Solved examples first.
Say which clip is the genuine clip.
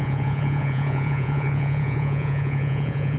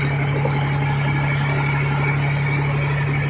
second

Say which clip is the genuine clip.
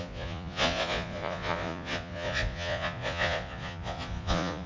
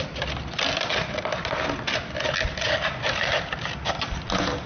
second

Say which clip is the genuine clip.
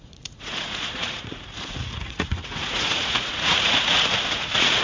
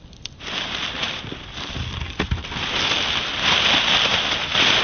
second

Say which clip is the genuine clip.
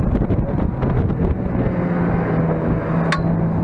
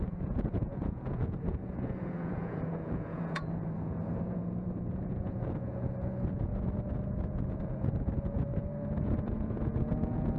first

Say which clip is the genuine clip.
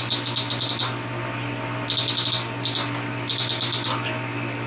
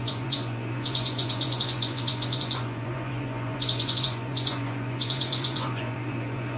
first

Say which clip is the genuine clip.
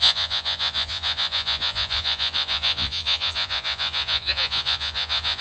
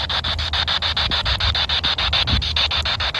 second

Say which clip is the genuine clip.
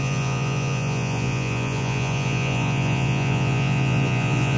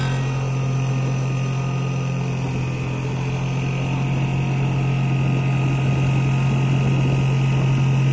second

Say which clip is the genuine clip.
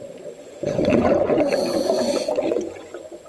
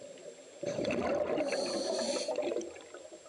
second